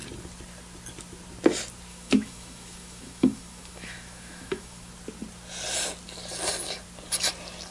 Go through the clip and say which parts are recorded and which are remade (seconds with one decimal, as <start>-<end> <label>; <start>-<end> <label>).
0.0-1.9 recorded; 1.9-4.9 remade; 4.9-7.7 recorded